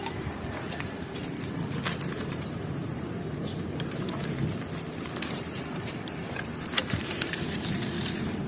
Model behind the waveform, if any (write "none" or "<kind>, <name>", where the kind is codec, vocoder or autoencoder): vocoder, BigVGAN v2